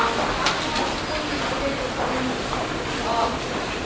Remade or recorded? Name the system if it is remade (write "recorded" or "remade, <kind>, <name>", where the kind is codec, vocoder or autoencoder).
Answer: recorded